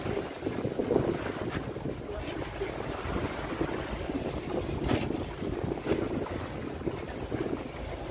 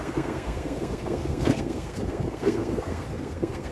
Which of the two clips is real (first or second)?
first